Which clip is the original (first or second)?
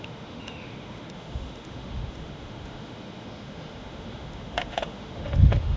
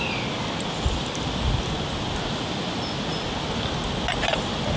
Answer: second